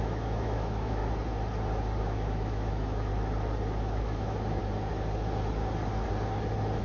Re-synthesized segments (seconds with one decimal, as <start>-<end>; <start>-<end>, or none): 0.0-1.0; 2.0-3.1; 3.8-4.6